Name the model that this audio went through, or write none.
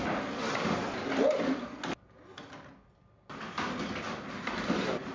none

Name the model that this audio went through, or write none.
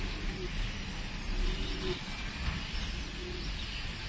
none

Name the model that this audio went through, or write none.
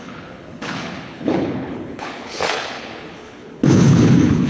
codec, HILCodec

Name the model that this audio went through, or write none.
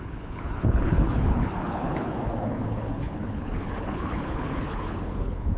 codec, HILCodec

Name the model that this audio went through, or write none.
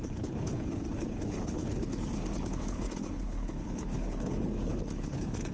codec, HILCodec